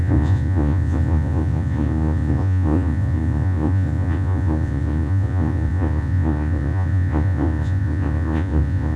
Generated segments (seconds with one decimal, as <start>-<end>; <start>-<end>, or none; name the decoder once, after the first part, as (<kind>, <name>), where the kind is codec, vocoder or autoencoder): 0.0-9.0 (vocoder, Vocos)